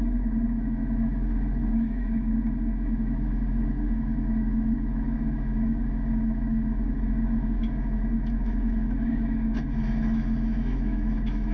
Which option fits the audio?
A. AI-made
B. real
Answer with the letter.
A